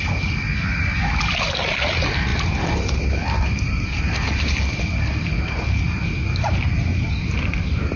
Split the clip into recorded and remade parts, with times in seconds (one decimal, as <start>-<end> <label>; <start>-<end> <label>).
0.0-8.0 recorded